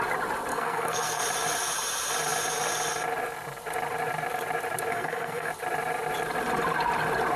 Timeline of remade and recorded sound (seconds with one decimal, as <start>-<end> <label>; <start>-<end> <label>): 0.0-0.5 recorded; 0.5-1.2 remade; 1.2-4.9 recorded; 4.9-5.5 remade; 5.5-7.4 recorded